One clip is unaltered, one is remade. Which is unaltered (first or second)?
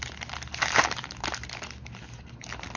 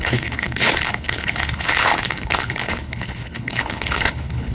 first